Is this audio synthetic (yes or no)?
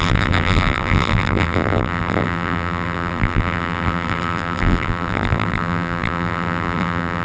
yes